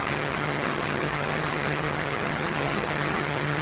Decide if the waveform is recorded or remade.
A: remade